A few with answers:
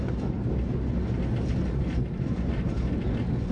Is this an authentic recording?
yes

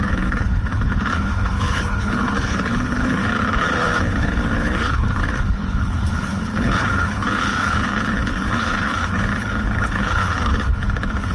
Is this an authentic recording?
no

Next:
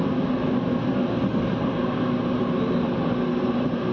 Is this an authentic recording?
yes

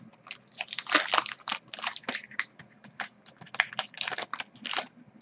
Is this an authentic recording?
yes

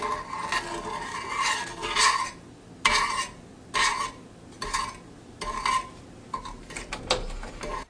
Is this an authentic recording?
yes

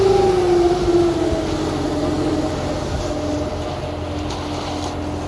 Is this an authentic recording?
yes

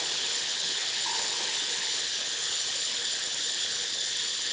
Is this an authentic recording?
no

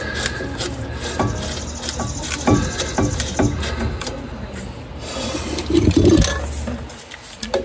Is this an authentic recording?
yes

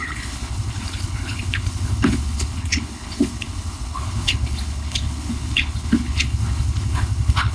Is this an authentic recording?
no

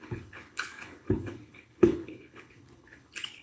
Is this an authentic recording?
no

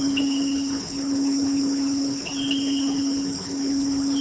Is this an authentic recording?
no